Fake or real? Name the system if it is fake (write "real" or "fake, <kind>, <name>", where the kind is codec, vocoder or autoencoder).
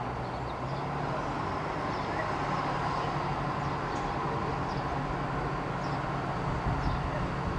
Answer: real